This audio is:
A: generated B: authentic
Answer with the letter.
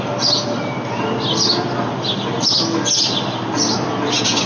B